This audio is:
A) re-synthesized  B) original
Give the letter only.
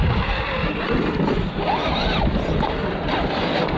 B